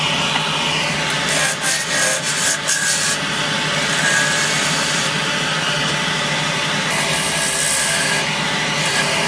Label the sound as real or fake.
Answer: real